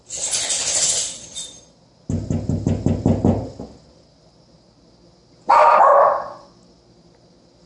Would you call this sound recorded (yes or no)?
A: yes